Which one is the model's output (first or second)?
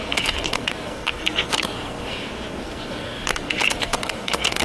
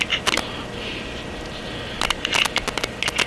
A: first